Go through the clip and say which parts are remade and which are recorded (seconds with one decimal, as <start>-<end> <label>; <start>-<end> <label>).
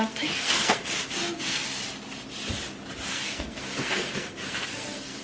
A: 0.0-1.7 remade; 1.7-3.1 recorded; 3.1-5.2 remade